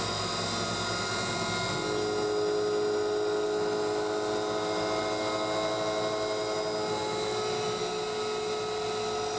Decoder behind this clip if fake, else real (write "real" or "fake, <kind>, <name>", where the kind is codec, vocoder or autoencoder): real